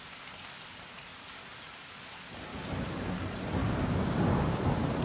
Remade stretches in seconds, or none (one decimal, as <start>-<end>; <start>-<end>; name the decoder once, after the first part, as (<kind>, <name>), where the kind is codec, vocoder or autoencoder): 2.5-3.0 (codec, DAC); 3.6-4.6